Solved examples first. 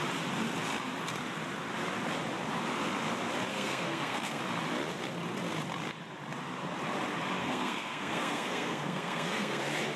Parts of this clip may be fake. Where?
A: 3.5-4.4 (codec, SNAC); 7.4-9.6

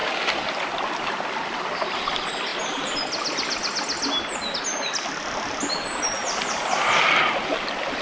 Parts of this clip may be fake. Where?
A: none

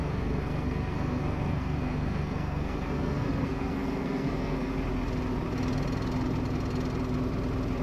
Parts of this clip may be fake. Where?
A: 0.0-4.7 (codec, SNAC)

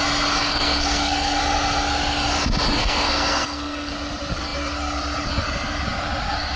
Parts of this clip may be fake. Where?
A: 0.4-1.4 (codec, SNAC); 2.8-3.9

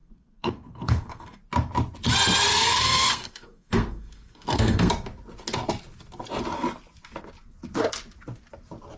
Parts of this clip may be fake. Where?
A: 0.0-1.4 (codec, SNAC); 2.5-4.9

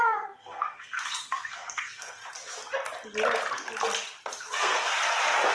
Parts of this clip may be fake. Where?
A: 0.0-2.2 (codec, SNAC); 4.4-4.9

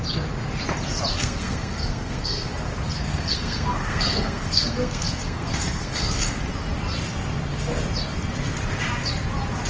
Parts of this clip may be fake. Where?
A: 1.1-2.5 (codec, SNAC); 2.9-6.4